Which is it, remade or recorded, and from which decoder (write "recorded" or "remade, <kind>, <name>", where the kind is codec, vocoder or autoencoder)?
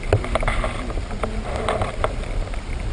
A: recorded